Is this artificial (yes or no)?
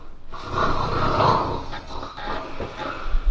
no